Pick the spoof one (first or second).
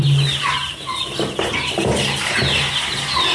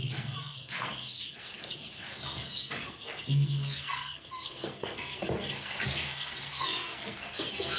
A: second